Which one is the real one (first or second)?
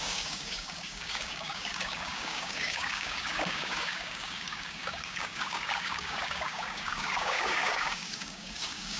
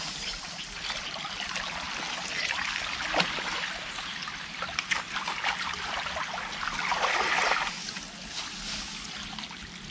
second